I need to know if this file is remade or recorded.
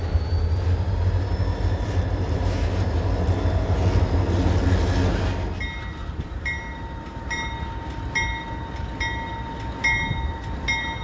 recorded